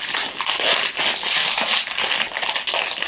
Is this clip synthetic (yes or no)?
no